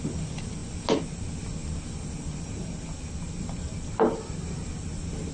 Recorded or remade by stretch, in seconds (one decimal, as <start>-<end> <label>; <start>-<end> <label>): 0.0-5.3 recorded

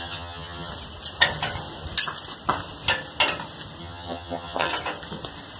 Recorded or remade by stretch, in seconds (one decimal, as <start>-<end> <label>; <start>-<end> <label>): 0.0-0.7 remade; 0.7-3.8 recorded; 3.8-4.7 remade; 4.7-5.6 recorded